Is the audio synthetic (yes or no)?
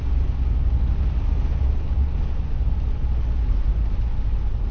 no